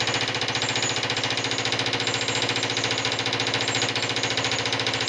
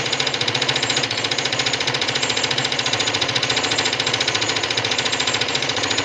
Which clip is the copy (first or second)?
second